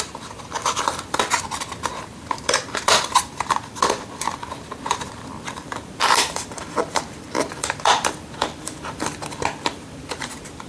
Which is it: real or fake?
fake